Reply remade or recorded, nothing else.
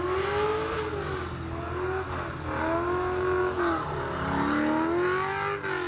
recorded